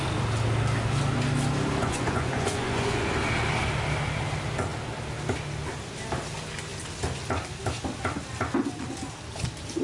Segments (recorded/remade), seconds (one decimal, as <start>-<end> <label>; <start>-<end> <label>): 0.0-1.8 recorded; 1.8-3.1 remade; 3.1-9.8 recorded